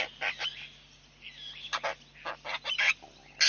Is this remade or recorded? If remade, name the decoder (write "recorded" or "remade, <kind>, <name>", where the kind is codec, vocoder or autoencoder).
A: recorded